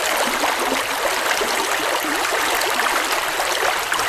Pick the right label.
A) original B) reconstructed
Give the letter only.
A